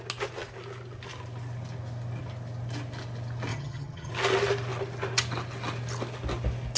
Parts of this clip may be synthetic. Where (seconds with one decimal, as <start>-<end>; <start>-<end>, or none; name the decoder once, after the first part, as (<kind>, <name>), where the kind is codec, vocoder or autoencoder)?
3.5-4.1 (vocoder, HiFi-GAN)